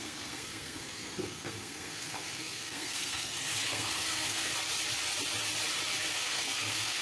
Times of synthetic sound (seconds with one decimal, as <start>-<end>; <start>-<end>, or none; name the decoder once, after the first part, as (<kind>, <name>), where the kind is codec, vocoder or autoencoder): 0.0-4.5 (codec, SNAC); 6.1-7.0

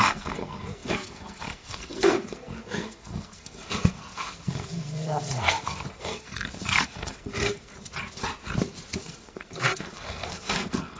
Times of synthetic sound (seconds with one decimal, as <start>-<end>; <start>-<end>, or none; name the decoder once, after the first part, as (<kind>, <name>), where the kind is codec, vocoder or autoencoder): 0.0-7.7 (codec, SNAC); 9.0-11.0

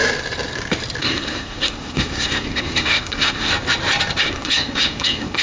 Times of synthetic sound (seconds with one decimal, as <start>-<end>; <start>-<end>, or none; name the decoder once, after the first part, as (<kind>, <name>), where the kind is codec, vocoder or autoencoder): 1.0-3.5 (codec, SNAC); 4.2-5.4